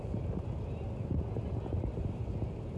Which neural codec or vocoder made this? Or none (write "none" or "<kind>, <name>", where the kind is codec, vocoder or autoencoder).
none